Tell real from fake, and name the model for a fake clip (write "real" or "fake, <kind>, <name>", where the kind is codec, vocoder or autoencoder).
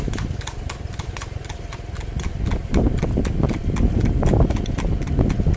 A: real